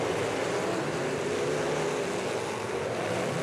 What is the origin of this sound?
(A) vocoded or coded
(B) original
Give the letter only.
B